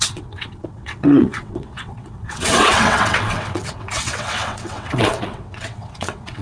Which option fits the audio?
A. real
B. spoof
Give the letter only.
B